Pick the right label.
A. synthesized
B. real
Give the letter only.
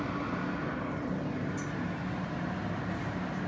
B